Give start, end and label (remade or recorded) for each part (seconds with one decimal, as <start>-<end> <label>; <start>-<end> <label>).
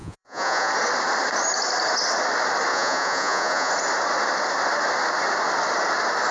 0.0-0.7 remade; 0.7-2.7 recorded; 2.7-3.7 remade; 3.7-6.3 recorded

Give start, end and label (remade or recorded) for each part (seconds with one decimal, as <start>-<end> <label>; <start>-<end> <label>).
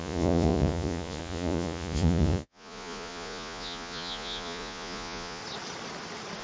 0.0-5.4 remade; 5.4-6.4 recorded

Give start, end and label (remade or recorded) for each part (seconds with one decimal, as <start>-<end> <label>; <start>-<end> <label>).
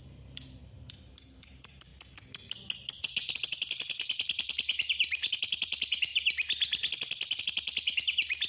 0.0-1.9 remade; 1.9-3.3 recorded; 3.3-6.1 remade; 6.1-7.4 recorded; 7.4-8.5 remade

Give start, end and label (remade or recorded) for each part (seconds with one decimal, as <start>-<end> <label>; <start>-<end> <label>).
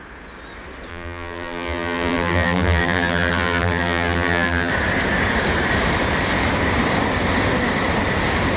0.0-0.9 recorded; 0.9-4.7 remade; 4.7-8.6 recorded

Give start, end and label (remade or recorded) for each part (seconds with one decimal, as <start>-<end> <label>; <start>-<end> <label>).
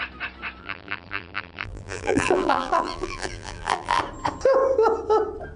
0.0-0.6 recorded; 0.6-4.0 remade; 4.0-5.6 recorded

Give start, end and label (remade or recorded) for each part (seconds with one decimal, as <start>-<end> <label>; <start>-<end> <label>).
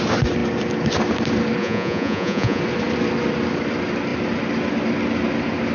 0.0-1.6 recorded; 1.6-2.6 remade; 2.6-5.7 recorded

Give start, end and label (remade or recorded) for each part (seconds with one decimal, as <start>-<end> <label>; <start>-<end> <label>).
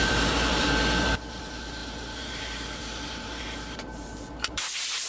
0.0-5.1 remade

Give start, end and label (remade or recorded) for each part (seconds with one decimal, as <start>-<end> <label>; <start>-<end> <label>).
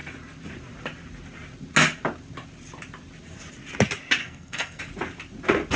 0.0-4.2 recorded; 4.2-4.8 remade; 4.8-5.8 recorded